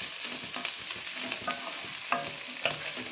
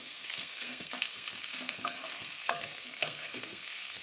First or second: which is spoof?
second